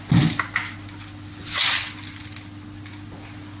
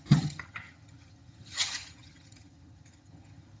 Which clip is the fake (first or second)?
second